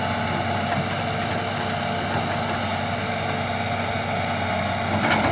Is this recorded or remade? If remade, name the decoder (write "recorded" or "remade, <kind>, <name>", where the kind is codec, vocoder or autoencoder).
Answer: recorded